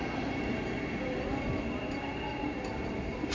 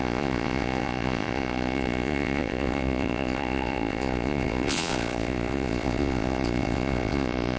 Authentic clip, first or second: first